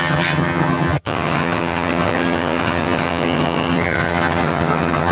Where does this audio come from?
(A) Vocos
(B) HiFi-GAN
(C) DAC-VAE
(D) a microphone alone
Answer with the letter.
B